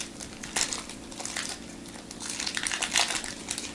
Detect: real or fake fake